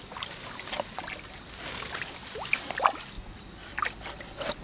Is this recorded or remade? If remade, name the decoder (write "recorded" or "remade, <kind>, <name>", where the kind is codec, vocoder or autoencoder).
recorded